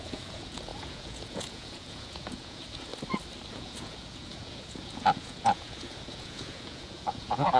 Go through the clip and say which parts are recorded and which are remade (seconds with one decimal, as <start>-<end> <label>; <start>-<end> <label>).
0.0-2.9 remade; 2.9-3.5 recorded; 3.5-7.6 remade